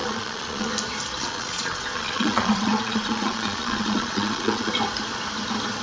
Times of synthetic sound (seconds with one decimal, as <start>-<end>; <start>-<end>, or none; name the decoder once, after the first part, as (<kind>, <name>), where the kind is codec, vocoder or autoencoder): 0.0-0.7 (vocoder, Vocos); 1.2-4.7